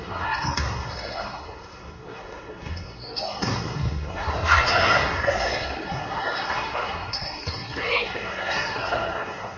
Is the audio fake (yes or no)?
yes